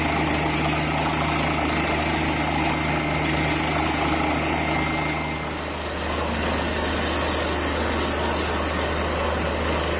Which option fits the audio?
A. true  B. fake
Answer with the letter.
A